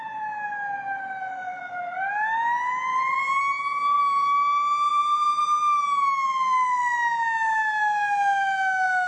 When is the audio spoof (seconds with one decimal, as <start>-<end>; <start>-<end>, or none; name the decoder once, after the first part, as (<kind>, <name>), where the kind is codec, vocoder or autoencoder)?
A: 1.5-2.1 (vocoder, BigVGAN v2); 2.9-3.4; 4.9-5.4